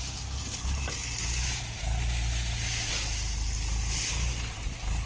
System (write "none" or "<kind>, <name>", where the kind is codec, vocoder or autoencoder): none